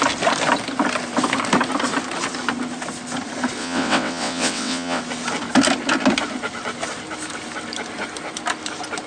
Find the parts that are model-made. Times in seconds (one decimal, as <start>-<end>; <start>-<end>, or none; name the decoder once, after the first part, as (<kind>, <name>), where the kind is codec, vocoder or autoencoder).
3.6-5.0 (vocoder, WaveNeXt)